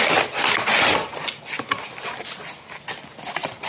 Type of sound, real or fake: real